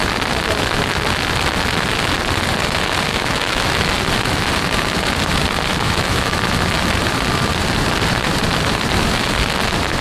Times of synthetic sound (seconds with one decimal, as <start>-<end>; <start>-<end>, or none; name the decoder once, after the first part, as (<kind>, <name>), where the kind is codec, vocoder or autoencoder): 3.1-3.9 (autoencoder, DAC-VAE); 5.7-6.4